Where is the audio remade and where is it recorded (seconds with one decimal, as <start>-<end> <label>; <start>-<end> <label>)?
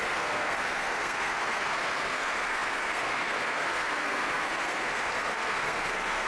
0.0-6.3 remade